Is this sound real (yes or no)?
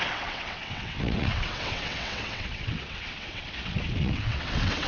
no